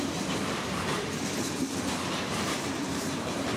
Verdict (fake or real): fake